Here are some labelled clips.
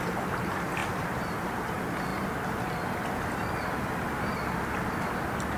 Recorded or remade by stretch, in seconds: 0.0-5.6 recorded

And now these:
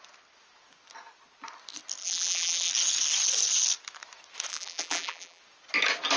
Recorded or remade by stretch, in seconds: 0.0-2.0 recorded; 2.0-2.7 remade; 2.7-4.5 recorded; 4.5-5.4 remade; 5.4-6.2 recorded

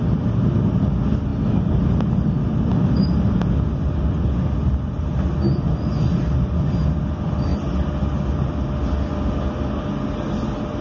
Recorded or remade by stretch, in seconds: 0.0-1.3 recorded; 1.3-1.8 remade; 1.8-10.8 recorded

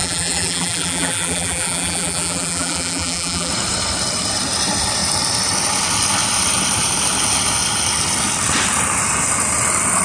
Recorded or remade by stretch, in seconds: 0.0-3.5 remade; 3.5-10.0 recorded

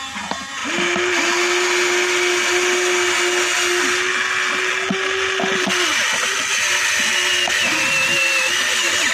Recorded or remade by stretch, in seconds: 0.0-9.1 recorded